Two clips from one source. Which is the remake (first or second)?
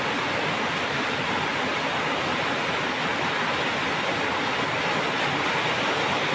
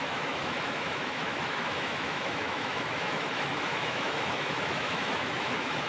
second